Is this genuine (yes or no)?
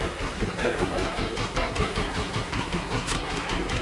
no